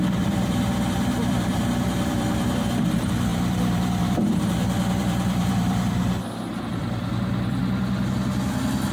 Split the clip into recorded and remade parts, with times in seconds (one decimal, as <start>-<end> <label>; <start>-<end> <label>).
0.0-7.6 remade; 7.6-8.9 recorded